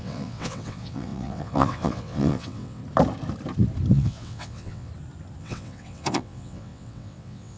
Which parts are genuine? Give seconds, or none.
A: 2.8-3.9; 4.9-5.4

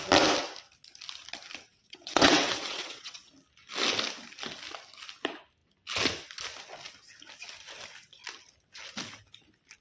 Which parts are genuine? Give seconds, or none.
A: 0.0-1.7; 3.3-9.8

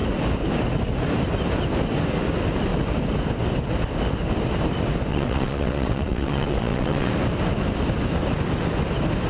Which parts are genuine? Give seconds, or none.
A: 0.0-5.1; 7.1-9.3

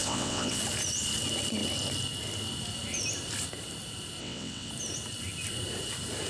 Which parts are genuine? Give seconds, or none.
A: 0.6-4.2; 4.7-6.3

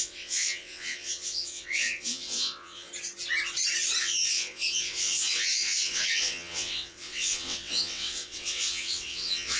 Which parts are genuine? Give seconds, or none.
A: 2.9-4.0

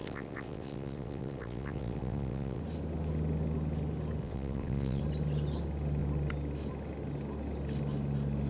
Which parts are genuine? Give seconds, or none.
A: 2.6-4.2; 5.0-8.5